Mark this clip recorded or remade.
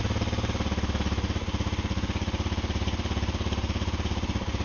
recorded